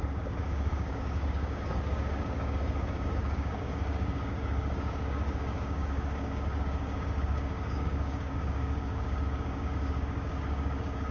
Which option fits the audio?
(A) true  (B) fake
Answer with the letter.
B